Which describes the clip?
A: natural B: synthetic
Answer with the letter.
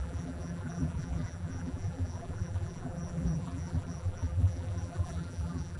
B